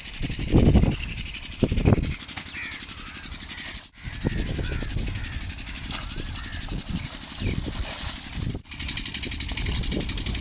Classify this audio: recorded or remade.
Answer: recorded